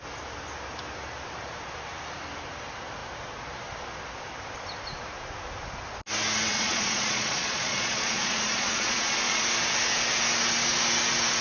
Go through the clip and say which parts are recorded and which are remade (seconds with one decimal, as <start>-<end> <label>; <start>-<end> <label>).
0.0-6.5 recorded; 6.5-9.4 remade; 9.4-11.4 recorded